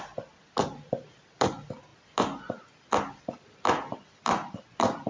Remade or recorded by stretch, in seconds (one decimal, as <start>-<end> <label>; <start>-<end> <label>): 0.0-5.1 recorded